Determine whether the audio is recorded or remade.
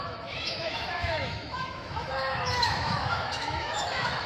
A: remade